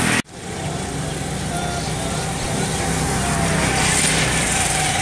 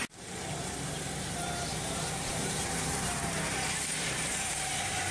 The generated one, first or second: second